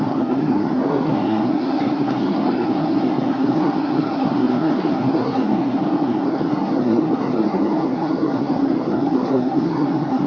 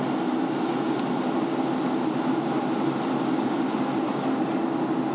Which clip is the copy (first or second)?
first